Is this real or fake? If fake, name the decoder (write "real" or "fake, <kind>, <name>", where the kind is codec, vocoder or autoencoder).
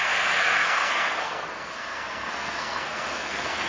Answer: fake, codec, SNAC